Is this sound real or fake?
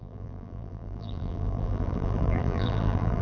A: fake